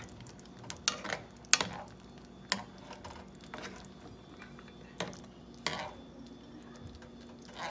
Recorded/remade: recorded